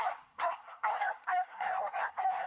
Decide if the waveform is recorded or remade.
remade